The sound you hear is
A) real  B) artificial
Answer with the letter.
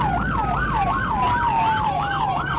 A